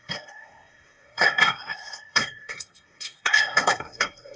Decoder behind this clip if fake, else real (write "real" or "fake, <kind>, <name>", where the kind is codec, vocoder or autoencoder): fake, codec, SNAC